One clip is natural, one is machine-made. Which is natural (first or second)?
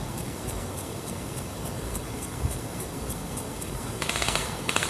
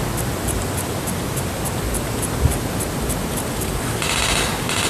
second